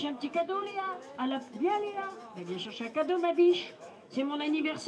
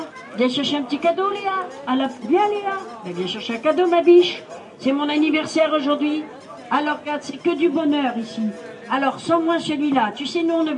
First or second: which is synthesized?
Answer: first